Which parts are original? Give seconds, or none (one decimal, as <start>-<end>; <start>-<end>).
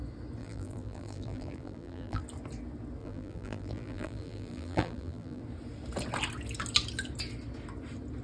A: 0.0-0.4; 2.2-3.0; 5.4-8.2